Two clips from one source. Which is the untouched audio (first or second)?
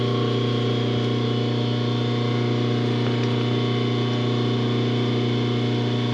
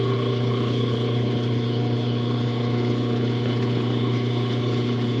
first